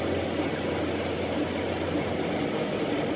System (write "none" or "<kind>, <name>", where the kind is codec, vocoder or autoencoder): none